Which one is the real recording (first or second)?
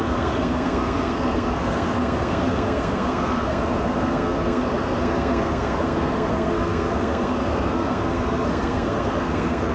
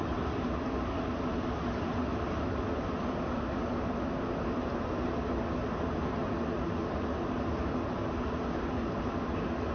second